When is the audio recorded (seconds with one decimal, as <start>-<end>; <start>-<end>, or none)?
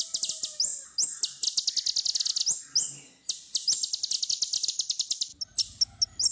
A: 0.0-6.3